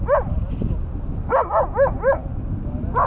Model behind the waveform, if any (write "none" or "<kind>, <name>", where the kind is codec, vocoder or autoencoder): none